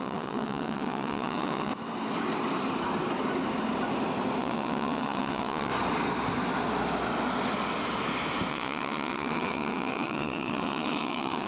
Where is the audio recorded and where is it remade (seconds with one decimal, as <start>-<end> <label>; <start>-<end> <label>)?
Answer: 0.0-1.7 remade; 1.7-4.4 recorded; 4.4-5.7 remade; 5.7-8.5 recorded; 8.5-11.5 remade